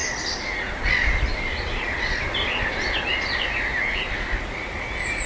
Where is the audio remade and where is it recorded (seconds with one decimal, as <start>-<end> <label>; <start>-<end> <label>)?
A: 0.0-5.3 recorded